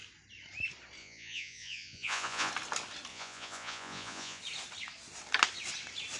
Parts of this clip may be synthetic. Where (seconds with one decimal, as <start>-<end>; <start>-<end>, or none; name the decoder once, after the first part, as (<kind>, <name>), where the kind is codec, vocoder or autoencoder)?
1.0-2.5 (vocoder, Vocos); 3.1-4.4